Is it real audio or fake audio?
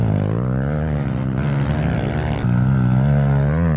real